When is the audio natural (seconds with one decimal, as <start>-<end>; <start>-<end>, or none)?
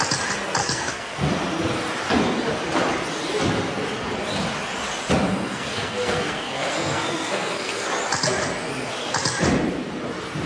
0.0-0.6; 1.3-5.3; 7.9-10.5